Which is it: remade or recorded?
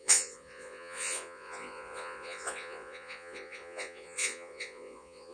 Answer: remade